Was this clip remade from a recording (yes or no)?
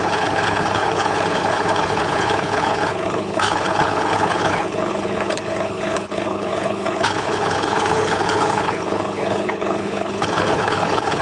yes